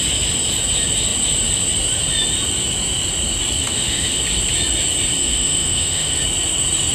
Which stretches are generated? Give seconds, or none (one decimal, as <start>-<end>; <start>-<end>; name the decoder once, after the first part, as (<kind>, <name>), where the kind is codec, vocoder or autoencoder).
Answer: 3.6-4.2 (autoencoder, DAC-VAE); 5.2-6.2

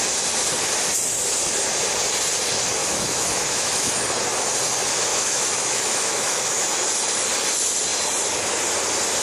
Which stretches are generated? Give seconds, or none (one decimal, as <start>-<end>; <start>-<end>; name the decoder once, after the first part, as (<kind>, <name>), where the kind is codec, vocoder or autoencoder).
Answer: 2.8-3.9 (autoencoder, DAC-VAE); 5.1-6.6

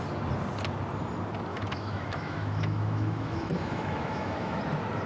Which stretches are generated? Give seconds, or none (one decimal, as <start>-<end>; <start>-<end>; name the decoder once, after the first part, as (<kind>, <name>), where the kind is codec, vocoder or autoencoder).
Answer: 1.5-4.6 (autoencoder, DAC-VAE)

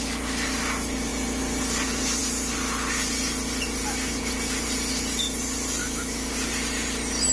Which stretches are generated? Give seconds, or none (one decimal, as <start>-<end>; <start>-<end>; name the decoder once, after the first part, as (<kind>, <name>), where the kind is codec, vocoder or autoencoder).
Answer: 3.8-4.3 (autoencoder, DAC-VAE); 5.8-6.3

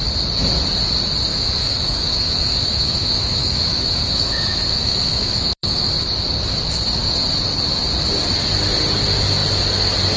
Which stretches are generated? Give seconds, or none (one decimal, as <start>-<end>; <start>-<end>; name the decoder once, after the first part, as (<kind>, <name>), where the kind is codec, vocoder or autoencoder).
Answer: 1.3-5.9 (autoencoder, DAC-VAE)

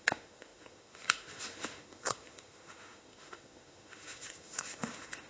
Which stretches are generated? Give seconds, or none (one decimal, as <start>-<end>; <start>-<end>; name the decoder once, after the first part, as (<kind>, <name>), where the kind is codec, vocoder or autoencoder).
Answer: 0.0-5.3 (autoencoder, DAC-VAE)